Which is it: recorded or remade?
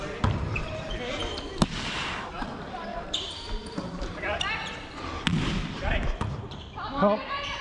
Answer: recorded